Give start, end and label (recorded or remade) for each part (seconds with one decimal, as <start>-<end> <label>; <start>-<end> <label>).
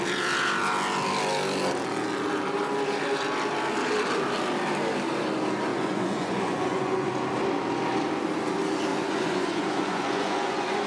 0.0-5.7 recorded; 5.7-7.1 remade; 7.1-8.9 recorded; 8.9-10.9 remade